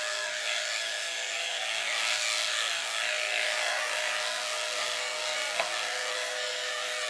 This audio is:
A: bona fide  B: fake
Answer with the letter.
B